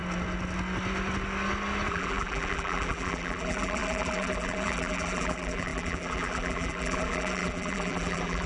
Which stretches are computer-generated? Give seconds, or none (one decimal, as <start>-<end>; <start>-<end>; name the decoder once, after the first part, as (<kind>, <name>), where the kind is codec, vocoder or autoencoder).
1.9-8.5 (vocoder, BigVGAN v2)